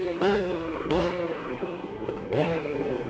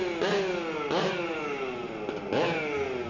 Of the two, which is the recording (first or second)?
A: second